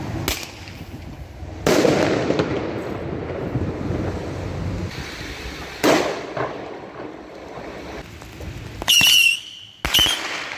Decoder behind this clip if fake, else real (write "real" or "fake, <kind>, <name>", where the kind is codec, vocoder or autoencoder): real